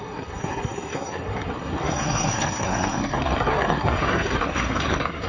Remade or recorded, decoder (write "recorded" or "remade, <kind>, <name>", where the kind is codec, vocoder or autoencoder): remade, codec, SNAC